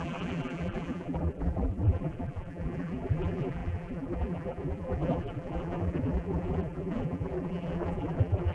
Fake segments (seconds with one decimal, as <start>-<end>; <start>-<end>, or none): 0.0-8.5

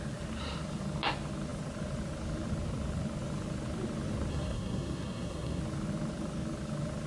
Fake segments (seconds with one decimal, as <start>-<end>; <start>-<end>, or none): 4.3-5.6

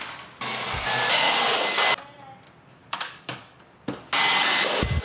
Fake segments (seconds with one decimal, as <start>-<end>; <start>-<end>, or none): 2.8-3.6

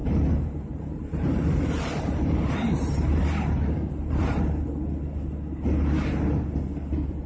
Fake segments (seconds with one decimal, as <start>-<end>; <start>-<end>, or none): 0.0-4.4

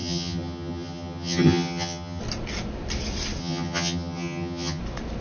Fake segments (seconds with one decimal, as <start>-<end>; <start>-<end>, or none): 0.0-2.2; 3.4-4.8